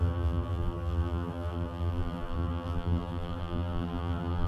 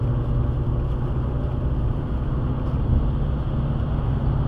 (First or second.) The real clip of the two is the second